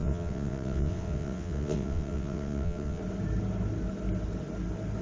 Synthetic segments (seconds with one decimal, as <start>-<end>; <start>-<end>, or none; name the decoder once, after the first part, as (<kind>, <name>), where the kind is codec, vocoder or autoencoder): 0.0-3.0 (vocoder, WaveNeXt)